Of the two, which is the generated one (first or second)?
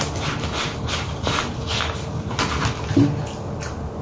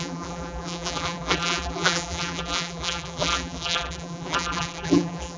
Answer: second